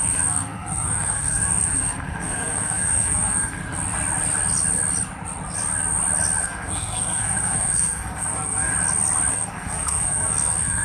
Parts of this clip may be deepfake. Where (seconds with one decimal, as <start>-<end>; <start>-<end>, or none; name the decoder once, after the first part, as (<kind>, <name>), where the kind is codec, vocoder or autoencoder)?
0.0-3.6 (codec, SNAC); 6.4-8.7; 9.3-10.8